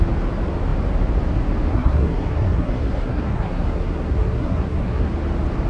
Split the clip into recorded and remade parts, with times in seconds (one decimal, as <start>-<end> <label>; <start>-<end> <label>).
0.0-1.7 recorded; 1.7-5.1 remade; 5.1-5.7 recorded